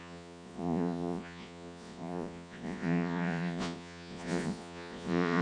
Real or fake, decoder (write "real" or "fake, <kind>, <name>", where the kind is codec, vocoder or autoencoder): fake, vocoder, Vocos